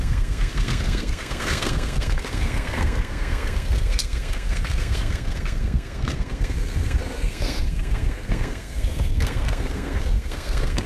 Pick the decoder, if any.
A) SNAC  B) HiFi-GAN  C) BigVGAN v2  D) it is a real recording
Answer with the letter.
A